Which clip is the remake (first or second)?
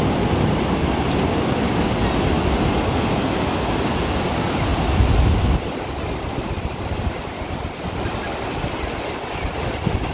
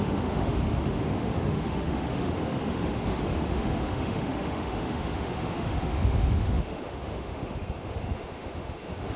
second